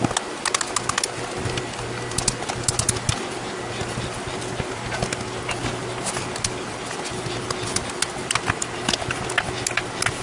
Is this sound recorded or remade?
recorded